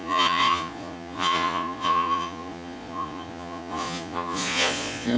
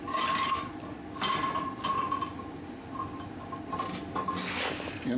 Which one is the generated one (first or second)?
first